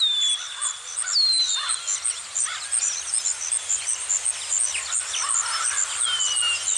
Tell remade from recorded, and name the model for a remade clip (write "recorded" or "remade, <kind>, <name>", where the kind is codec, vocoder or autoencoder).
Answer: recorded